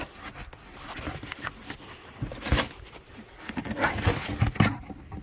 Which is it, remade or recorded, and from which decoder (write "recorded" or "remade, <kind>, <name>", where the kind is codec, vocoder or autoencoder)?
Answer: remade, vocoder, BigVGAN v2